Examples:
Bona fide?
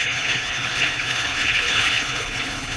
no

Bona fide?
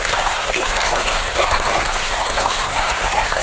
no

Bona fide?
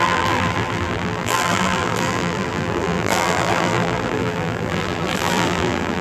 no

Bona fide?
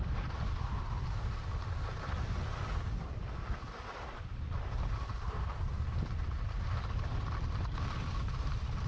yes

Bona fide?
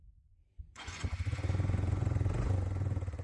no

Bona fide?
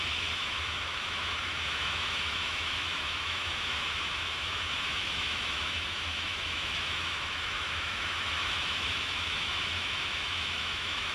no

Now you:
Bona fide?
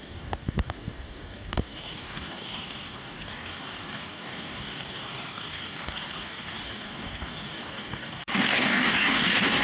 no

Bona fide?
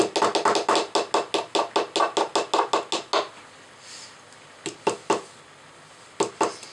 yes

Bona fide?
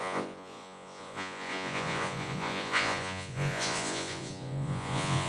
no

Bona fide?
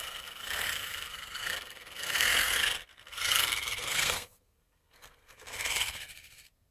no